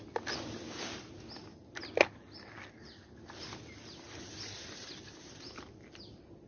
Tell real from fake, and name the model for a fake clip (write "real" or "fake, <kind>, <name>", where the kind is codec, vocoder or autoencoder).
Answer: real